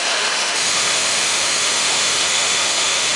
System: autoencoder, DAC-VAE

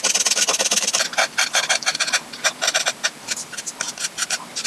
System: none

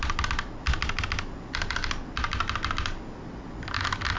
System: none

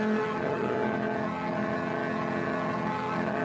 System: vocoder, HiFi-GAN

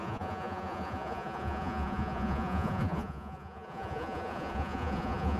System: vocoder, Vocos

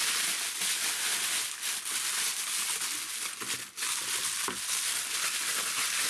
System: none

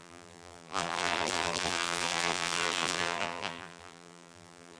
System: vocoder, BigVGAN v2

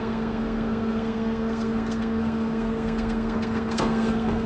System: codec, SNAC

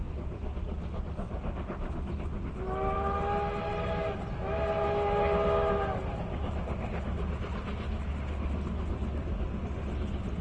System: none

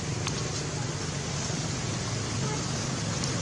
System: none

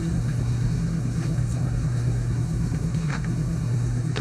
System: codec, SNAC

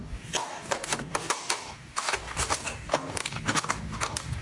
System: codec, DAC